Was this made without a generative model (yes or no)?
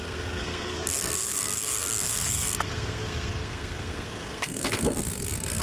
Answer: no